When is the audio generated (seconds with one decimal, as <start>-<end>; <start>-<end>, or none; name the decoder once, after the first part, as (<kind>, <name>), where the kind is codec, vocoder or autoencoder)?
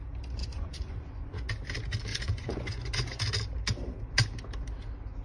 0.4-1.5 (vocoder, Vocos); 2.1-3.2